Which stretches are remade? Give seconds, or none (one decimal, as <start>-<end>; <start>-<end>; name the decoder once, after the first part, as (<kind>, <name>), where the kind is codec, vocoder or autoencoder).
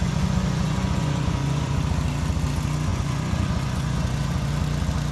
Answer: 0.0-1.8 (vocoder, Vocos); 2.9-4.5